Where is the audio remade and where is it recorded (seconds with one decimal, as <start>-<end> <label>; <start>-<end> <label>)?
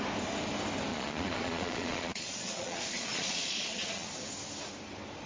0.0-0.9 recorded; 0.9-4.1 remade; 4.1-5.3 recorded